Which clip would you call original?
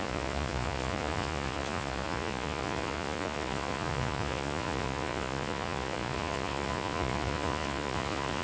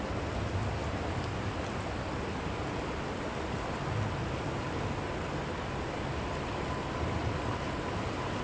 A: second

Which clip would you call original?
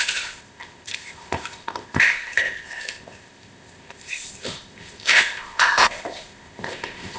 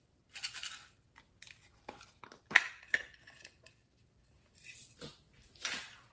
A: second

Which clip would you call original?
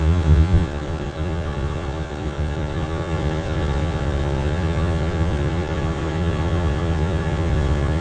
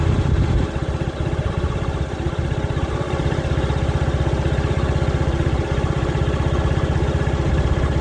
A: second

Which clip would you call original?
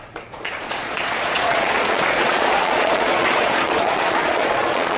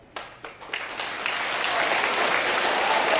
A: second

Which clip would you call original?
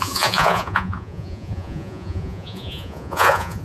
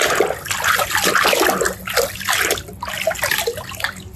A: second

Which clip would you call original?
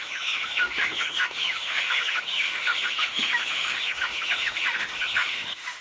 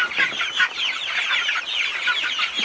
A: second